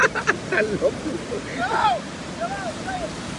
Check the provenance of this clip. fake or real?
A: real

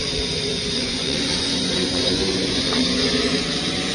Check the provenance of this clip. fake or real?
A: fake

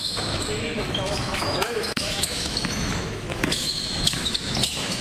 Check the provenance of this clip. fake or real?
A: fake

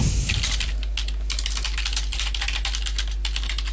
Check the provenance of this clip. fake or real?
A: real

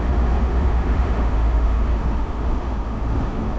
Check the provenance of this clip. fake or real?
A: fake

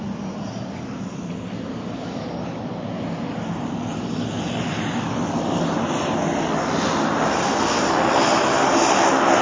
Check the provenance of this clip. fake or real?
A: real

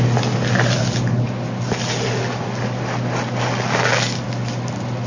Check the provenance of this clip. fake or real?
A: real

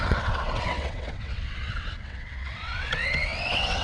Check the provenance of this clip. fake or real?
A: fake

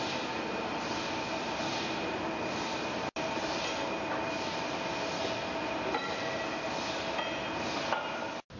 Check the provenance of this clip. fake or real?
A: real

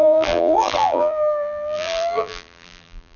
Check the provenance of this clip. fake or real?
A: fake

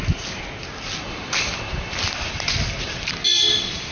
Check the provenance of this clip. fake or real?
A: real